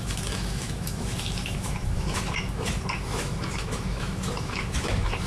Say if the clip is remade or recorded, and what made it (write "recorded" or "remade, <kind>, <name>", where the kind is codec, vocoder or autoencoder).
remade, autoencoder, DAC-VAE